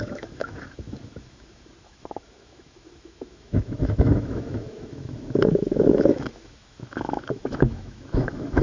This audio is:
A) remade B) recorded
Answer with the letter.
A